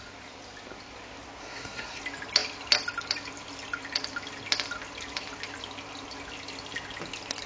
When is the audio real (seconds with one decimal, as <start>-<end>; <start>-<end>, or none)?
0.0-1.4; 2.0-7.5